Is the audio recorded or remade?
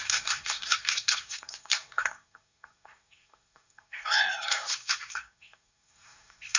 remade